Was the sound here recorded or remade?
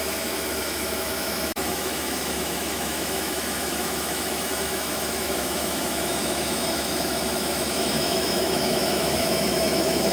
remade